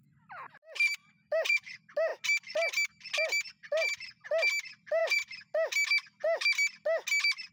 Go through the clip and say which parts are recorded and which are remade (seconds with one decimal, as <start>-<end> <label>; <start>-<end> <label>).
0.0-7.5 recorded